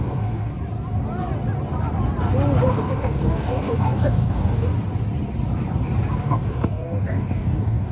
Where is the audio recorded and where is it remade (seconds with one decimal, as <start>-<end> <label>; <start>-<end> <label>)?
0.0-0.5 remade; 0.5-2.7 recorded; 2.7-4.7 remade; 4.7-6.2 recorded; 6.2-7.9 remade

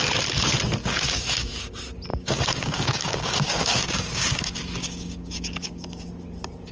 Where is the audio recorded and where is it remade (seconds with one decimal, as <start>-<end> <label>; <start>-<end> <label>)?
0.0-0.8 recorded; 0.8-1.7 remade; 1.7-2.1 recorded; 2.1-6.1 remade; 6.1-6.7 recorded

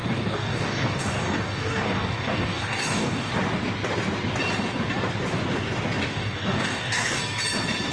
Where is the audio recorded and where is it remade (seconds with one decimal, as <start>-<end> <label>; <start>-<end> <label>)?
0.0-3.3 remade; 3.3-6.1 recorded; 6.1-7.2 remade; 7.2-7.9 recorded

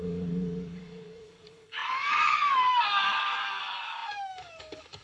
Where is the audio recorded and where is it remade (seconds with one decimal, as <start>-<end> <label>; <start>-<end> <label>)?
0.0-5.0 remade

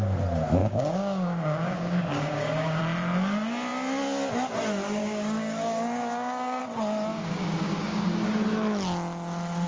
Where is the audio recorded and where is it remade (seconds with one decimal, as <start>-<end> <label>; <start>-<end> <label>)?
0.0-0.6 recorded; 0.6-2.8 remade; 2.8-5.0 recorded; 5.0-6.6 remade; 6.6-7.1 recorded; 7.1-8.0 remade; 8.0-9.7 recorded

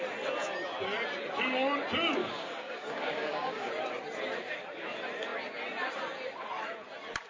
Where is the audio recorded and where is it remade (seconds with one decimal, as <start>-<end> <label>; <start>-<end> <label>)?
0.0-2.2 recorded; 2.2-3.7 remade; 3.7-7.3 recorded

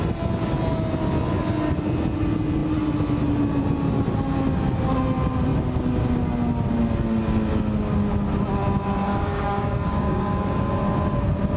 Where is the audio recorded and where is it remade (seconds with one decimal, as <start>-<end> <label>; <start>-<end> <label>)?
0.0-9.1 recorded; 9.1-10.7 remade; 10.7-11.6 recorded